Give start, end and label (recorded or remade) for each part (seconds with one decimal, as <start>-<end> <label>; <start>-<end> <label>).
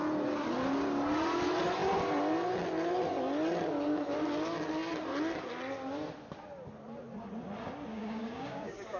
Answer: 0.0-7.9 recorded; 7.9-9.0 remade